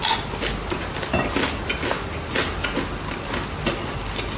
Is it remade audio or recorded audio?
recorded